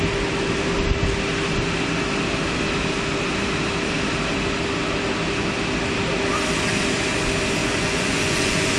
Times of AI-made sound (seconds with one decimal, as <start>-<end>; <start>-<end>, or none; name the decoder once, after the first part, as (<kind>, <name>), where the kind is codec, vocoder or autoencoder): 7.6-8.8 (vocoder, Vocos)